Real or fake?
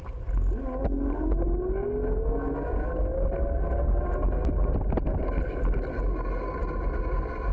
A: real